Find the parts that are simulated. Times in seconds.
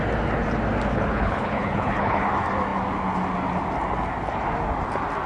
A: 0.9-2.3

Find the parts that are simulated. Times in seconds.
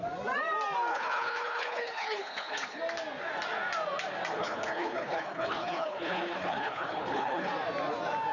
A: 0.9-2.8; 4.3-7.5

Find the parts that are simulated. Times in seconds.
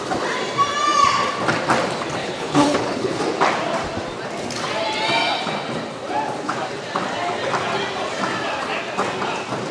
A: 2.2-3.2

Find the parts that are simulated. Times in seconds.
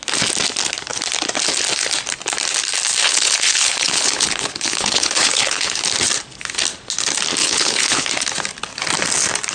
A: 3.0-5.8; 7.4-8.1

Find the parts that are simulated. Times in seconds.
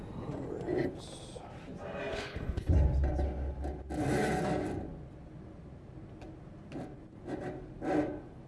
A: 2.1-2.7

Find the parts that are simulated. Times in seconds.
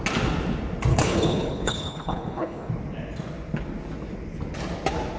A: 0.9-2.7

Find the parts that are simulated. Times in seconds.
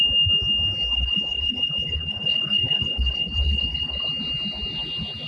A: 0.9-4.1